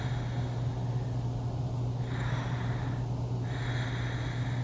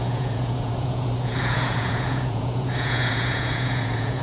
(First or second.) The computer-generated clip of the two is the second